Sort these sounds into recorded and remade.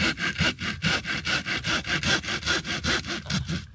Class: recorded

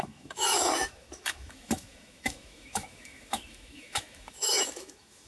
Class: remade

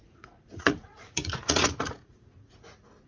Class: remade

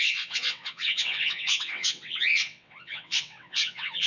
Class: remade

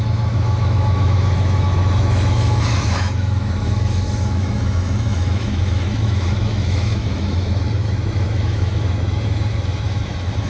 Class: remade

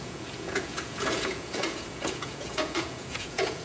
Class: remade